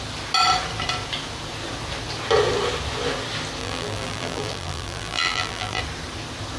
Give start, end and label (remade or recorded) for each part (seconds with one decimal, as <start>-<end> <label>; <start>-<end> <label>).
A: 0.0-3.6 recorded; 3.6-5.8 remade; 5.8-6.6 recorded